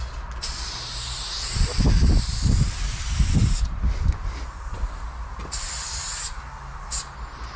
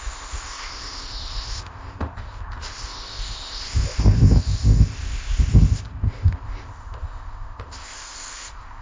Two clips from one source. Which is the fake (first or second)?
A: second